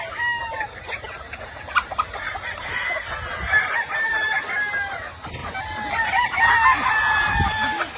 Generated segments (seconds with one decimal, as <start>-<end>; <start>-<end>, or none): 0.4-2.4; 5.4-6.5